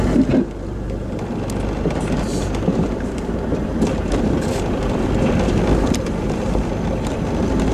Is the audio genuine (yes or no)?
yes